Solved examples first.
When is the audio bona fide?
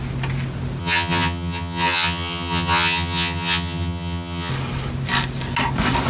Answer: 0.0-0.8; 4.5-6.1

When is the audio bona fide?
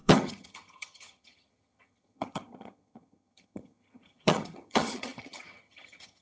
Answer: none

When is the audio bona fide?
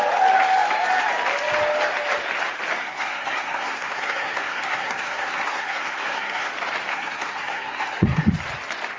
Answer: 0.0-2.8; 6.5-6.9; 8.3-9.0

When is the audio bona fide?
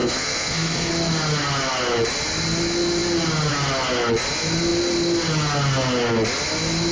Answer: 0.9-6.9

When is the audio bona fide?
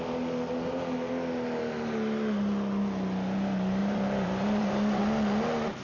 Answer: 0.0-3.8; 5.0-5.8